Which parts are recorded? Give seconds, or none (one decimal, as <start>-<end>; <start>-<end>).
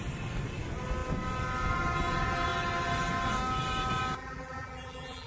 0.0-4.2